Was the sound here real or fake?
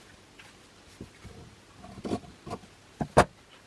real